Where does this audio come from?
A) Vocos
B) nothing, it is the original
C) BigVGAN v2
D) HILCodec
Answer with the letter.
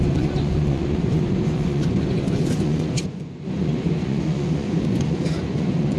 A